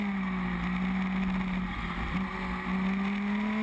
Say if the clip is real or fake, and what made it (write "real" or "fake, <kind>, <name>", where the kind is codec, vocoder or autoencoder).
real